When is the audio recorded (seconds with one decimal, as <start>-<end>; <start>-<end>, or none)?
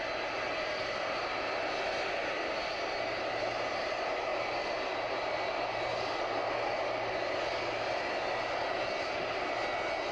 0.0-10.1